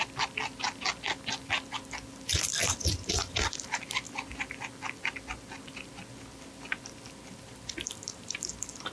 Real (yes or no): yes